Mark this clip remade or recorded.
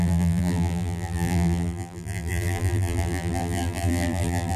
remade